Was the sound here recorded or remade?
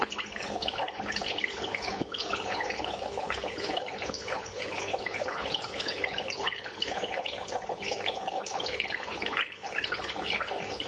remade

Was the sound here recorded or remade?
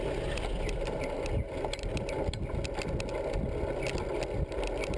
recorded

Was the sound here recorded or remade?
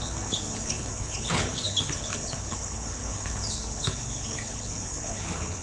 remade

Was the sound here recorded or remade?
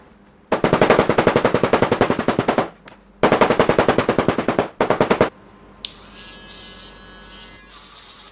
recorded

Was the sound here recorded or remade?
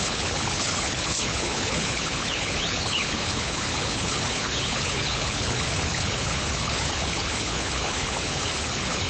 remade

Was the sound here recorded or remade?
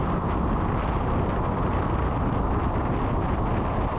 recorded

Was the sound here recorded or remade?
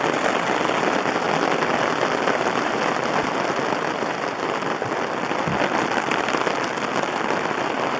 recorded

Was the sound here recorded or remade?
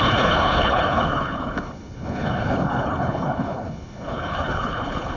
remade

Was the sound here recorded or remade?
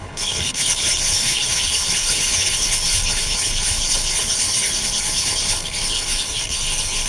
remade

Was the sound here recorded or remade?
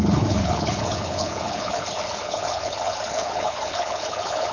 remade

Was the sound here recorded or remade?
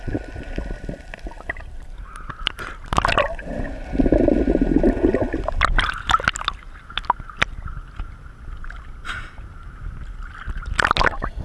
recorded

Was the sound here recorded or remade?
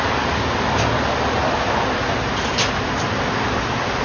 recorded